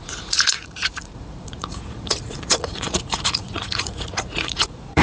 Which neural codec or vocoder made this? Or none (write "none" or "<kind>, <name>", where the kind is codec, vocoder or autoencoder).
vocoder, Vocos